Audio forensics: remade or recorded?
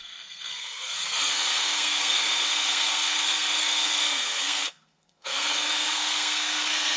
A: remade